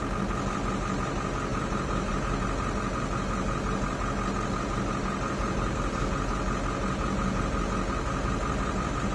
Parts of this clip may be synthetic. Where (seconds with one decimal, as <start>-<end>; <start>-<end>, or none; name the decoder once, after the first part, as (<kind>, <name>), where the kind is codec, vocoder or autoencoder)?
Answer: none